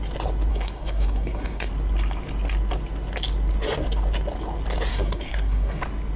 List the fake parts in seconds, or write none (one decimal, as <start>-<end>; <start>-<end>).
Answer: 0.5-1.7; 4.9-5.8